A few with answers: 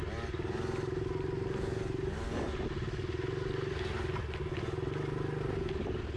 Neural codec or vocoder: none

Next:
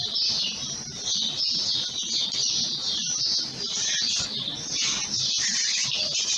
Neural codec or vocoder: none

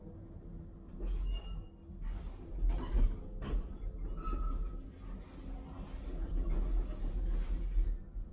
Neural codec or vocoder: none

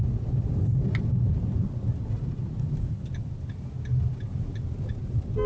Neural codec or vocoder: none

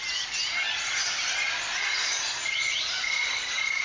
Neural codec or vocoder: none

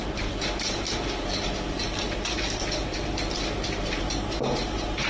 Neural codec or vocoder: vocoder, BigVGAN v2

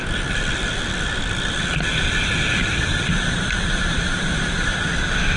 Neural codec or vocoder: none